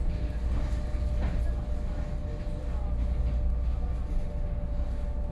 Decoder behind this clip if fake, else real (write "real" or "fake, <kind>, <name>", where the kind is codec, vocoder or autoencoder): real